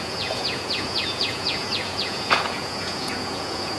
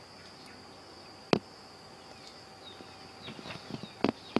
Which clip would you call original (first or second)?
second